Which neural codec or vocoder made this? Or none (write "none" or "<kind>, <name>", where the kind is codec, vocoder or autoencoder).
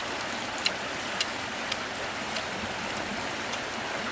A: none